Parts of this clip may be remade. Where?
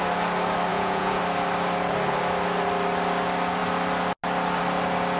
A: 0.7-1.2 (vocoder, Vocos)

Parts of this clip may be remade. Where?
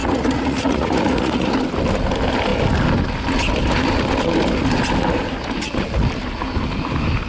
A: 0.0-1.5 (vocoder, Vocos)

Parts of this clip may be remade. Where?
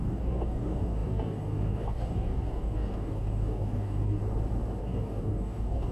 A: 0.0-4.2 (codec, DAC); 4.8-5.9